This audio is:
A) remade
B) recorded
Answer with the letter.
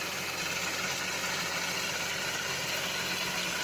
B